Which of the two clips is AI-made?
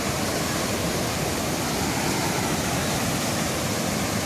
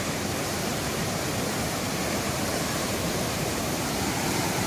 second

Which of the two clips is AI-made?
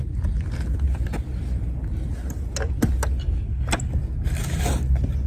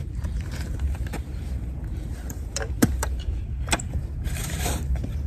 second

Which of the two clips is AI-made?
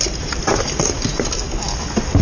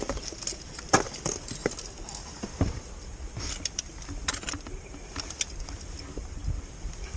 second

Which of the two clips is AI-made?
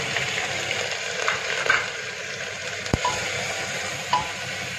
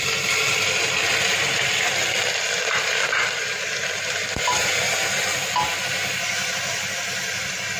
first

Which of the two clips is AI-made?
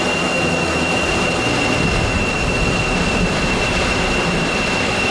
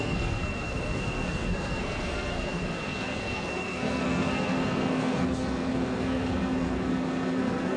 second